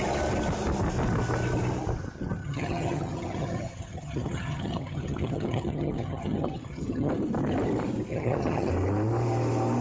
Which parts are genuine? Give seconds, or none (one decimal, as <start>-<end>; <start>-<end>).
0.0-2.4; 7.1-8.1; 8.7-9.8